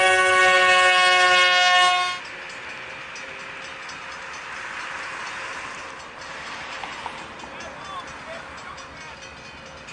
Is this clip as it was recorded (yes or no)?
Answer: yes